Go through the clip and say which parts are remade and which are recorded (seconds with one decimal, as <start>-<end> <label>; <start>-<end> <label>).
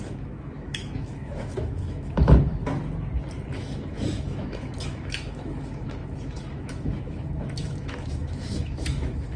0.0-2.5 remade; 2.5-3.5 recorded; 3.5-9.4 remade